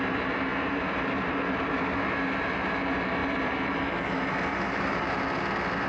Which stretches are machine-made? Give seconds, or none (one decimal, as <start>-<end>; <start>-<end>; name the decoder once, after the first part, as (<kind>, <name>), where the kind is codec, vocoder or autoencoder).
0.5-1.7 (vocoder, BigVGAN v2); 3.2-3.8; 4.5-5.1